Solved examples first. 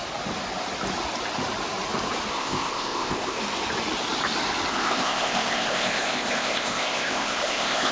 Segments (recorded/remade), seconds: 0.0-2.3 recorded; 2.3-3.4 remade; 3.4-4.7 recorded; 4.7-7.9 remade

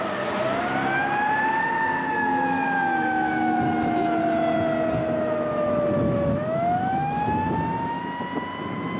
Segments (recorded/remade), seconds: 0.0-2.1 recorded; 2.1-4.2 remade; 4.2-5.0 recorded; 5.0-8.0 remade; 8.0-9.0 recorded

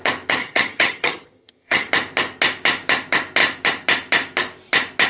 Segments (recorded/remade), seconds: 0.0-0.4 recorded; 0.4-1.9 remade; 1.9-5.1 recorded

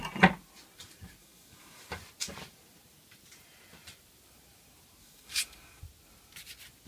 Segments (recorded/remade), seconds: 0.0-1.2 recorded; 1.2-2.0 remade; 2.0-5.0 recorded; 5.0-5.8 remade; 5.8-6.9 recorded